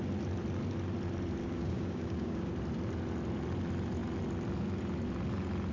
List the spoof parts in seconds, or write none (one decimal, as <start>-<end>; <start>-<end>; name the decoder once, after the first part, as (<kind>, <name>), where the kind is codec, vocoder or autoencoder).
1.4-2.5 (codec, DAC)